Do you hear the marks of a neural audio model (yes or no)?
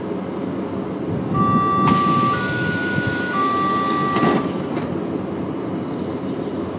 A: no